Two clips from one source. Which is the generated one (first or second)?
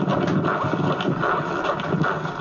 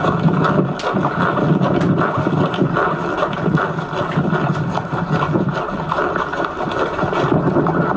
second